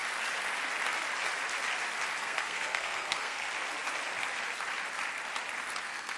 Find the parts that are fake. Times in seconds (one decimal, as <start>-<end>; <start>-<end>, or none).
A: 2.2-3.4; 5.8-6.2